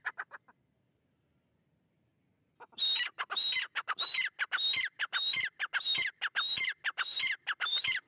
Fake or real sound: real